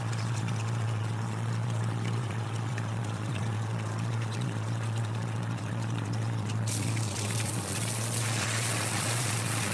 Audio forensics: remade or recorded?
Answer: remade